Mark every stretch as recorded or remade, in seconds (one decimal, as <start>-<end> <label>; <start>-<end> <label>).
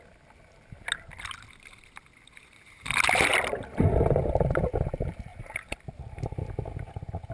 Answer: 0.0-5.3 recorded; 5.3-6.4 remade; 6.4-7.3 recorded